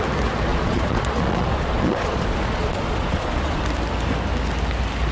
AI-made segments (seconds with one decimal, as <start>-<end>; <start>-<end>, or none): 0.5-3.6